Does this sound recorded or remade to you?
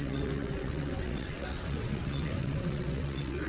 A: remade